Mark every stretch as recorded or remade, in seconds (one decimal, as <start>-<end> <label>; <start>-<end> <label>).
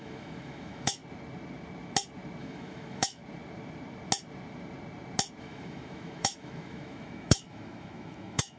0.0-1.0 remade; 1.0-2.4 recorded; 2.4-3.2 remade; 3.2-5.4 recorded; 5.4-8.6 remade